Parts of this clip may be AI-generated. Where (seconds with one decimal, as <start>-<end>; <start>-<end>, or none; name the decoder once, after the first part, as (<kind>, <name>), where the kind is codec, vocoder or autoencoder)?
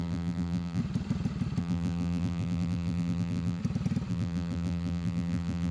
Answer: 0.0-0.8 (vocoder, BigVGAN v2); 1.6-3.6; 4.1-5.7